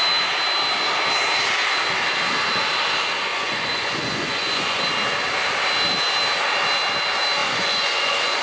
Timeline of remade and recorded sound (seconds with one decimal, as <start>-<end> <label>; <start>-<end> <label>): 0.0-3.3 recorded; 3.3-4.8 remade; 4.8-7.4 recorded; 7.4-8.4 remade